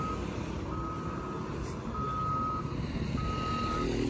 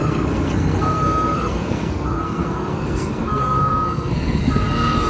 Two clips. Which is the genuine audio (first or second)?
first